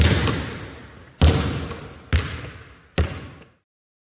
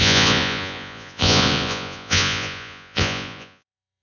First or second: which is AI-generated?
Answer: second